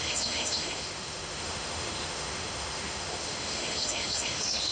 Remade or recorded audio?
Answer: remade